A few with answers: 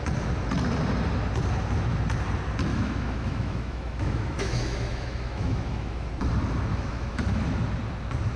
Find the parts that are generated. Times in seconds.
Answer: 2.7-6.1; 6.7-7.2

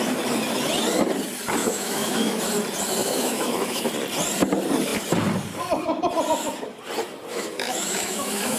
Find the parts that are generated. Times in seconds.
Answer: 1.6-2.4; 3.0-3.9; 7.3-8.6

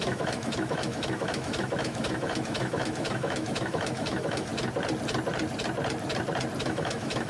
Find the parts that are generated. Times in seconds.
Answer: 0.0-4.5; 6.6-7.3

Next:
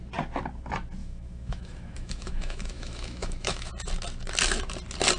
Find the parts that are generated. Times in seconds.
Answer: 1.0-3.7